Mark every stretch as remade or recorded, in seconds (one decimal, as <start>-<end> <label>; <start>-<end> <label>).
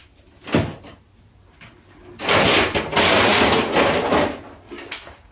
0.0-5.3 recorded